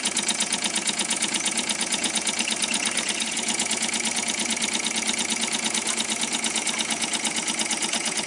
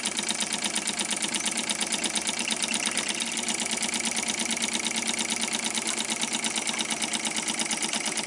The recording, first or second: second